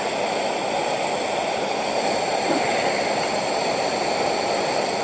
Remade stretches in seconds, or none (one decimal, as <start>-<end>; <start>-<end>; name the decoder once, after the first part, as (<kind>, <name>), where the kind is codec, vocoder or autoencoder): none